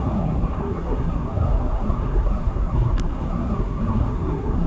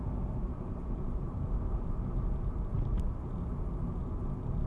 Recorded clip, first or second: second